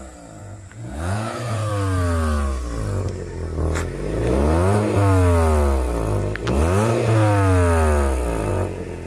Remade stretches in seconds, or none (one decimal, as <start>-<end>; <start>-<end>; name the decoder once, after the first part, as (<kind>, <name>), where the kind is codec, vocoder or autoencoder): 0.4-1.7 (vocoder, Vocos); 8.5-9.1

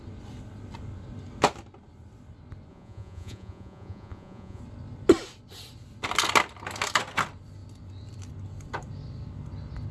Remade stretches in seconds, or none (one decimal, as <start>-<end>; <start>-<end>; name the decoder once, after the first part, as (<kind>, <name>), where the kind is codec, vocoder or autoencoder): 2.7-4.6 (vocoder, Vocos)

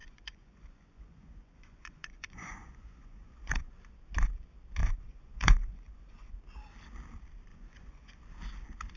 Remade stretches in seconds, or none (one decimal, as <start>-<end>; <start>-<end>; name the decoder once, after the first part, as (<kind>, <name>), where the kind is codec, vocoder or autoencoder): 0.0-3.7 (vocoder, Vocos); 4.8-6.3; 7.5-8.2